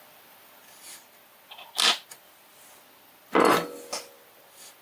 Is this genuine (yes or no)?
yes